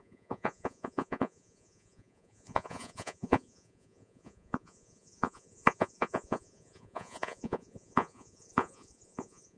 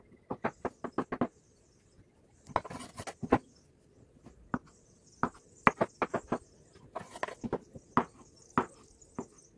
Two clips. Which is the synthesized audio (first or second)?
first